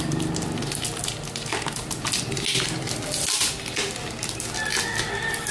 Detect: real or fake real